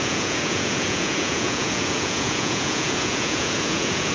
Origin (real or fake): fake